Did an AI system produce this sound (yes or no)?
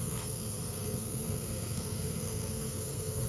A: yes